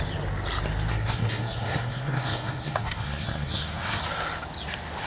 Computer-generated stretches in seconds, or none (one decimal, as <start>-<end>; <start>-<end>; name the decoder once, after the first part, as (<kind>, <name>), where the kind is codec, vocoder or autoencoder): 0.9-4.0 (codec, SNAC)